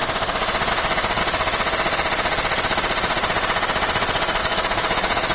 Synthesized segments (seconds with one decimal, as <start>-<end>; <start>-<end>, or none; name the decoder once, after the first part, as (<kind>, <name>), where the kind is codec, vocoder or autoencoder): 0.7-1.2 (autoencoder, DAC-VAE); 4.4-5.3